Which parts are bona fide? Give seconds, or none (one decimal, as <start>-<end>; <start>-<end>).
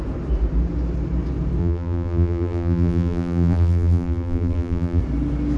0.0-1.6; 5.0-5.6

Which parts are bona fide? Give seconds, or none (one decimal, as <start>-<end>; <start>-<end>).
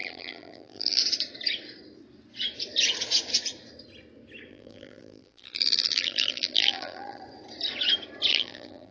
1.0-4.5; 7.2-8.3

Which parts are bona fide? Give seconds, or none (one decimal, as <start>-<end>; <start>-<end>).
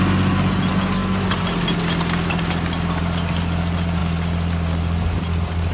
0.0-5.7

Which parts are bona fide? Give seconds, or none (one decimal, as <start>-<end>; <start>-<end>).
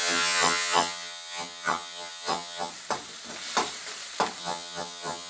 2.7-4.4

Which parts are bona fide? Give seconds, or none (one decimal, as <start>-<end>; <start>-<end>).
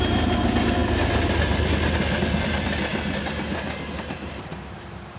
4.5-5.2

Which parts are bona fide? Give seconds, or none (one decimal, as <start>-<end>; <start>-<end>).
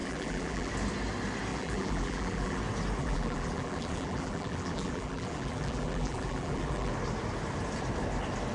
0.7-1.5; 2.6-3.0; 6.9-8.5